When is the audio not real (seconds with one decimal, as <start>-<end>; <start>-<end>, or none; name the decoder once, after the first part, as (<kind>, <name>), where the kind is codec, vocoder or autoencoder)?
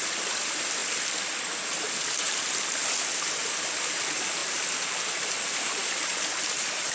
none